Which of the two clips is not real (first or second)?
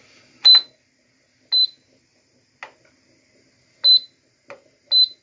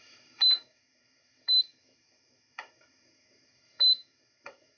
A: second